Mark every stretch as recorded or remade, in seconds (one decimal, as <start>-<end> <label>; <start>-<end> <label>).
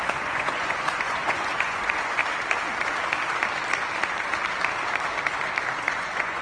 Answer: 0.0-2.2 remade; 2.2-5.8 recorded; 5.8-6.4 remade